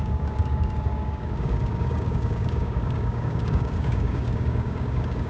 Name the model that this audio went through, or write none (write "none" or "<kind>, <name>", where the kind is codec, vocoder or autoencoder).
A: codec, DAC